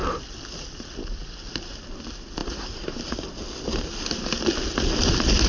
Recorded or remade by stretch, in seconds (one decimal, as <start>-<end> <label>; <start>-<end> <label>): 0.0-5.5 recorded